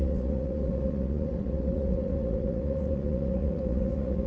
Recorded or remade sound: remade